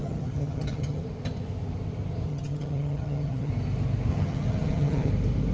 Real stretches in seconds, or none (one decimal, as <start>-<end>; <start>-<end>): 1.0-2.3; 3.5-4.1; 5.1-5.5